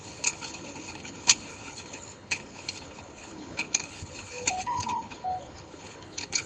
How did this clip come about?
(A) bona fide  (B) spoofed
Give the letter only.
B